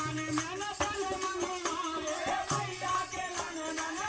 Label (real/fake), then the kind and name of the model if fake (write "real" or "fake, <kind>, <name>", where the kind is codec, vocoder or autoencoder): real